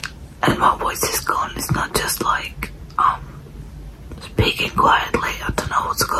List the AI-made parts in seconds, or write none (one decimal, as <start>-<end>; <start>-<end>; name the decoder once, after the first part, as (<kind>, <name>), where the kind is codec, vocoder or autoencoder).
0.0-2.5 (vocoder, BigVGAN v2); 3.4-4.4; 5.6-6.2